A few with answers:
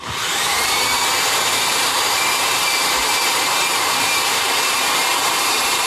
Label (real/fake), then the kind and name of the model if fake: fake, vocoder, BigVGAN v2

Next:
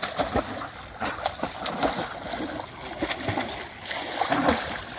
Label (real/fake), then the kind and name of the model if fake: real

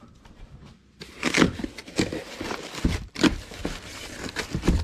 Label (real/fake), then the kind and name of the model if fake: real